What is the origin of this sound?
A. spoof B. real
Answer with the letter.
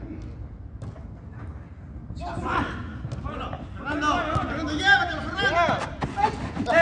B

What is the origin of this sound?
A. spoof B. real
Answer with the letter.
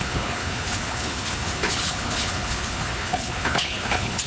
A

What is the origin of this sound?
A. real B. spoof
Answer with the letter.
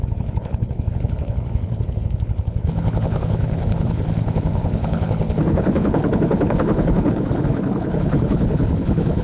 B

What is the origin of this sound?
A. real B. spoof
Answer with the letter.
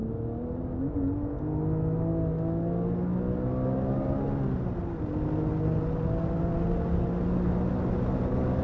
A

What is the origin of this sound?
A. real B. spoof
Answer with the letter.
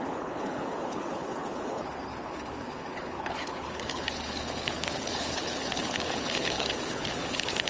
B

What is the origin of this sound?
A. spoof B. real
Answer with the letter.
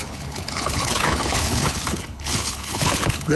A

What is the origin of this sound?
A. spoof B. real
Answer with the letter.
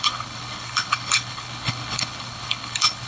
A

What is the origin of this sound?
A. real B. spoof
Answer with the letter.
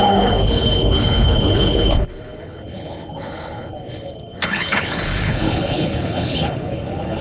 B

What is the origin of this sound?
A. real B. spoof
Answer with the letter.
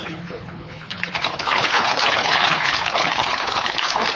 B